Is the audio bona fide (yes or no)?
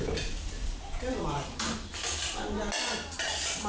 yes